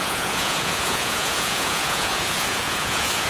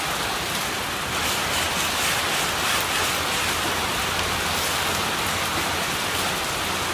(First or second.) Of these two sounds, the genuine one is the second